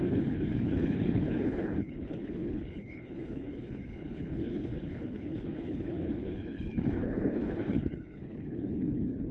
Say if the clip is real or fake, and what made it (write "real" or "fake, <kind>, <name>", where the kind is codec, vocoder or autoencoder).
fake, codec, HILCodec